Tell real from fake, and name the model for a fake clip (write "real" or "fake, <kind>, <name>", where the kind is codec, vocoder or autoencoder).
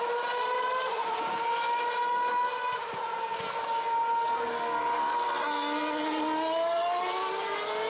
real